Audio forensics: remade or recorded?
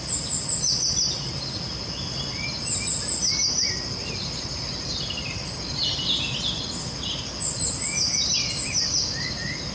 recorded